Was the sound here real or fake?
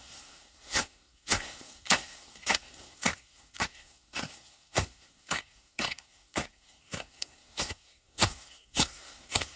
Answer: fake